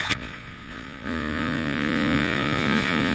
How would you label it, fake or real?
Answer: fake